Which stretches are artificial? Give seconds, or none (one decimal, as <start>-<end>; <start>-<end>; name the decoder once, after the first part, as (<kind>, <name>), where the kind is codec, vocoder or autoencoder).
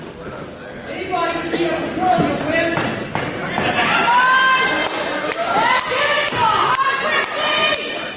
none